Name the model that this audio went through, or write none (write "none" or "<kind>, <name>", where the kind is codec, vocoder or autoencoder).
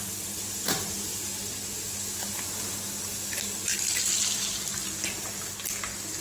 none